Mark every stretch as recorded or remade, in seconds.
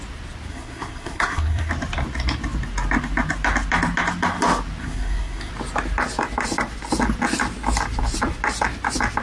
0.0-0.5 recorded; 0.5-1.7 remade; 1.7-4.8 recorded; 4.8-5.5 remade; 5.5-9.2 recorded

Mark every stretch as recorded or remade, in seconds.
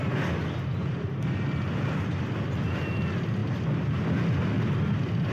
0.0-0.7 recorded; 0.7-2.1 remade; 2.1-5.3 recorded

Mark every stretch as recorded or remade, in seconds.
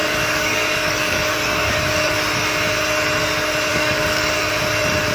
0.0-2.1 remade; 2.1-3.7 recorded; 3.7-4.5 remade; 4.5-5.1 recorded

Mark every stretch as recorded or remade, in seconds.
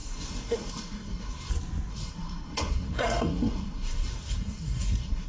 0.0-1.5 remade; 1.5-1.9 recorded; 1.9-5.3 remade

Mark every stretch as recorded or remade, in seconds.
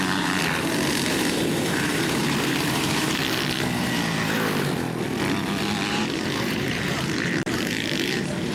0.0-0.4 remade; 0.4-0.9 recorded; 0.9-3.2 remade; 3.2-5.9 recorded; 5.9-8.5 remade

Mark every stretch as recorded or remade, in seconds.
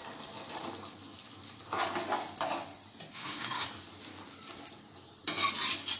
0.0-3.1 recorded; 3.1-3.7 remade; 3.7-6.0 recorded